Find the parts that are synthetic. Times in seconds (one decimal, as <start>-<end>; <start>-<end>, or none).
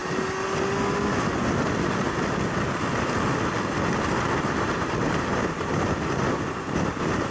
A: 4.4-7.3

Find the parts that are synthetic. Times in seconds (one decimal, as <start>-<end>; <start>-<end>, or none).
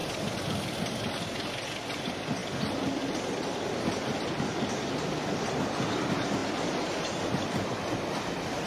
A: none